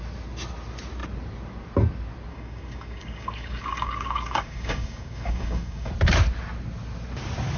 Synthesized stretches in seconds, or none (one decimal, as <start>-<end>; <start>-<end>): 2.3-5.9